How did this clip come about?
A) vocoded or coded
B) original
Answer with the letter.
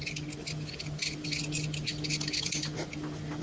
B